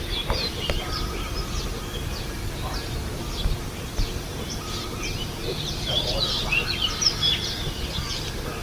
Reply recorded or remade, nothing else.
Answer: recorded